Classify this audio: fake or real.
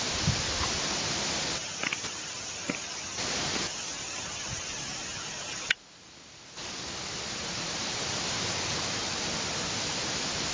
real